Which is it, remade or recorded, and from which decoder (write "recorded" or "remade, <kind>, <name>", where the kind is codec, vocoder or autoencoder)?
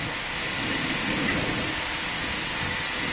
recorded